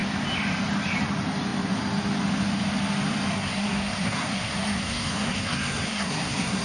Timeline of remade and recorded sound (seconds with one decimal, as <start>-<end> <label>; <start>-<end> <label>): 0.0-3.3 recorded; 3.3-6.6 remade

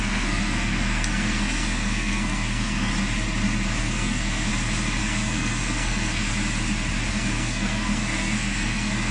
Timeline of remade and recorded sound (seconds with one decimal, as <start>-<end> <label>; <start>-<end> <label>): 0.0-2.9 remade; 2.9-3.8 recorded; 3.8-4.5 remade; 4.5-5.0 recorded; 5.0-6.3 remade; 6.3-7.1 recorded; 7.1-9.1 remade